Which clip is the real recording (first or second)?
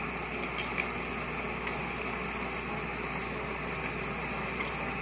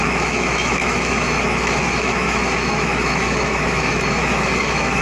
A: first